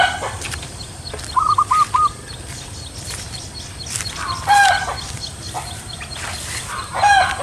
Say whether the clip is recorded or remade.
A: recorded